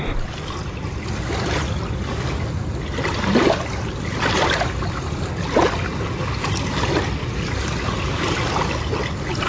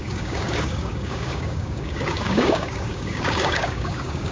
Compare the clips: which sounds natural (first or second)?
first